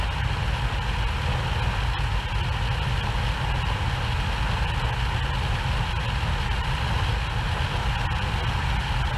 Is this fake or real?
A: real